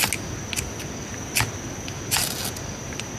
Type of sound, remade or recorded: recorded